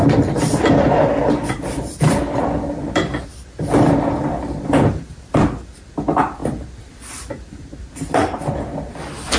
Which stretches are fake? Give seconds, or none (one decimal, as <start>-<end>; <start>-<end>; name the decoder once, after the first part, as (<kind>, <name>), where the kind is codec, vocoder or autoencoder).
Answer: 6.4-8.2 (vocoder, BigVGAN v2)